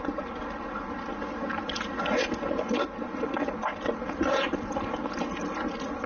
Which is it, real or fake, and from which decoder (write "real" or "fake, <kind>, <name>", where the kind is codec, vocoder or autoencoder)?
real